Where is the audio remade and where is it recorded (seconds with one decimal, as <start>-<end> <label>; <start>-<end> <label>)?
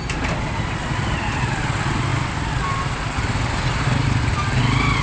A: 0.0-5.0 recorded